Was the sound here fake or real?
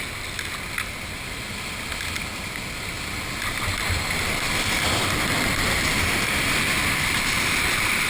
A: real